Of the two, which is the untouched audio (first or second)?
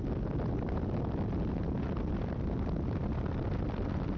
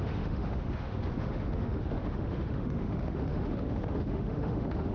first